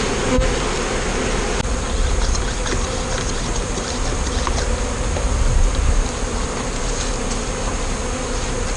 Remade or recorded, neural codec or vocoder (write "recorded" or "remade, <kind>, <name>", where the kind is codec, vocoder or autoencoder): recorded